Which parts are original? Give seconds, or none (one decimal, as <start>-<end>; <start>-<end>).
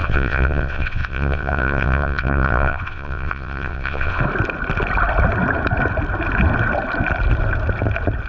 4.2-8.3